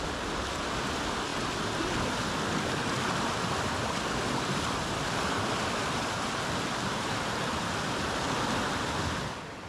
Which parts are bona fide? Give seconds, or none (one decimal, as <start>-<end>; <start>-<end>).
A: 0.0-9.7